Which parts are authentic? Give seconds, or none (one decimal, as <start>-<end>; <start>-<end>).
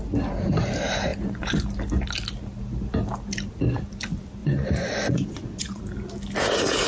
0.0-1.1; 1.6-4.4; 5.8-6.9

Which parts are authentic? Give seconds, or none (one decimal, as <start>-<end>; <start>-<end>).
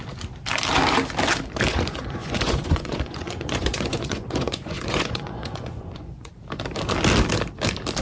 0.0-1.7; 6.3-8.0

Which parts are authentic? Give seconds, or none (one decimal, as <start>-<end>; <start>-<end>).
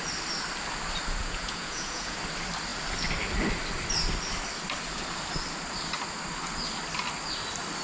0.0-1.2; 2.2-7.8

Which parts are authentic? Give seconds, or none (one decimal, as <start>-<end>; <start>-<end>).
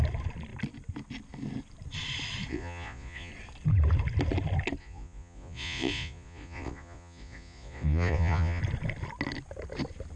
0.0-2.5; 3.3-4.8; 8.6-10.2